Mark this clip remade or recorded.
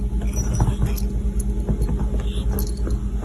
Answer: recorded